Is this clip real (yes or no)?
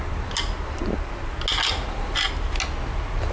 yes